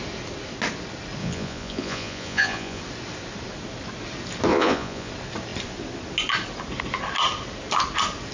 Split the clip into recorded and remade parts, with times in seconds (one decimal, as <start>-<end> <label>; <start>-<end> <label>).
0.0-1.2 recorded; 1.2-2.8 remade; 2.8-4.5 recorded; 4.5-5.1 remade; 5.1-8.3 recorded